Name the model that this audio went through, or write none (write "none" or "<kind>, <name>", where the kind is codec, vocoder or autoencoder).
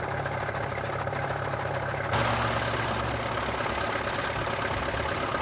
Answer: none